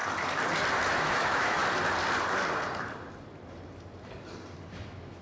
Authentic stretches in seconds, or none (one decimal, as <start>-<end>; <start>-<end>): 0.0-0.9; 1.6-4.7